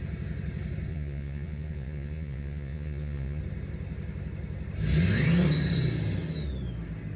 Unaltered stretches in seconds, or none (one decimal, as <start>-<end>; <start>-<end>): 0.0-0.9; 3.4-7.2